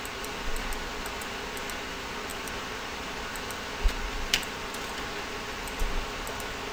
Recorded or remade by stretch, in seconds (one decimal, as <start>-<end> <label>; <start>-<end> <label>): 0.0-6.7 recorded